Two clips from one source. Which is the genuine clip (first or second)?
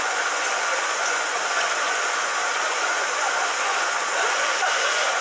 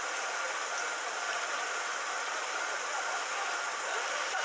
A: second